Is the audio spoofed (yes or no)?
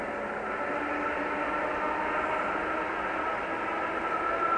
no